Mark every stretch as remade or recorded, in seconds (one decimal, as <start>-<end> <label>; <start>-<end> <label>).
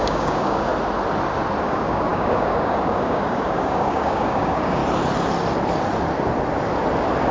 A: 0.0-0.7 remade; 0.7-1.6 recorded; 1.6-4.8 remade; 4.8-7.3 recorded